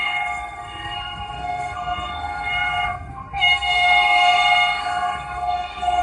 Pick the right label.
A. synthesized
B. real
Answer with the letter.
A